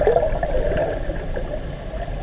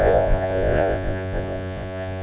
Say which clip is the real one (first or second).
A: first